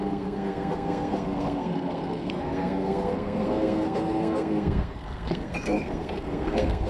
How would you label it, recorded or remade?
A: remade